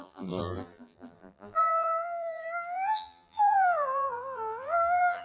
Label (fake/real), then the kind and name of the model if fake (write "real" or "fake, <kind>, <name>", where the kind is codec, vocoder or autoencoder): fake, vocoder, BigVGAN v2